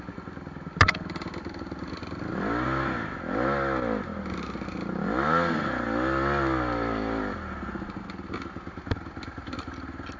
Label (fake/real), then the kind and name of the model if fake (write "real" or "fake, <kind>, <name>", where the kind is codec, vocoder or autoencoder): real